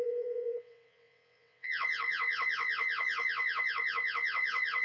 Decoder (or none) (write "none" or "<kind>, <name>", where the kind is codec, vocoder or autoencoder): vocoder, WaveNeXt